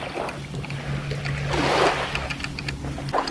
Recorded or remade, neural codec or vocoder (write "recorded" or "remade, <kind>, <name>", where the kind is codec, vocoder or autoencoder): recorded